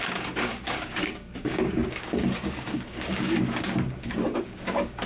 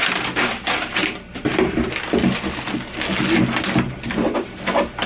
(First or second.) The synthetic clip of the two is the first